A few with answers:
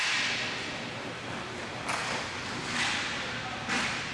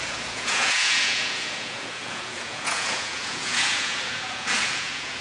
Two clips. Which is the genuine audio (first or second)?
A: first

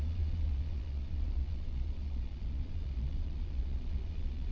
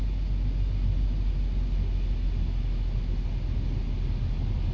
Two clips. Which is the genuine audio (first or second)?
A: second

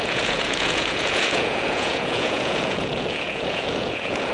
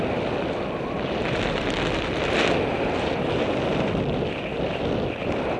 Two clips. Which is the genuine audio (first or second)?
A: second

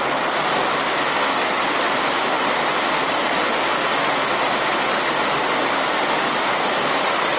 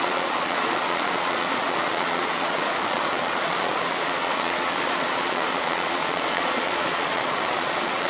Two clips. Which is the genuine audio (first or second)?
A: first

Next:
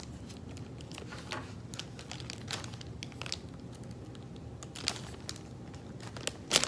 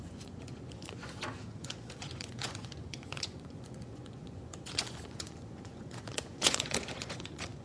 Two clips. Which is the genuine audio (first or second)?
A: first